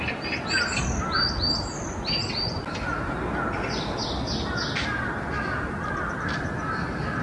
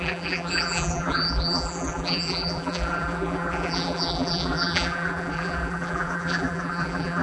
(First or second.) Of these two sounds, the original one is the first